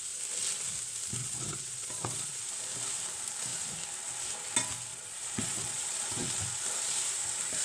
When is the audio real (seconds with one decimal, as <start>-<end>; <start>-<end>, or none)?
0.0-1.2; 2.4-4.9; 6.4-7.6